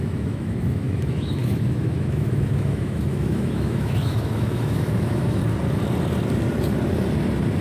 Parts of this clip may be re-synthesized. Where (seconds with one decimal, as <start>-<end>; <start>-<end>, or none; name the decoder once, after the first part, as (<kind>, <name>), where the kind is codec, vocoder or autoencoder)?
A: 0.0-5.4 (autoencoder, DAC-VAE)